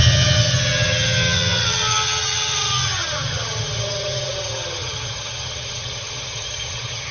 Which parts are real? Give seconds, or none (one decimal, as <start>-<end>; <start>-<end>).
none